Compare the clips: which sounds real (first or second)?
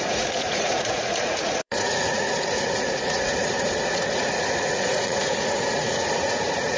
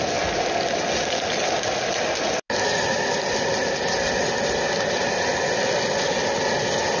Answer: second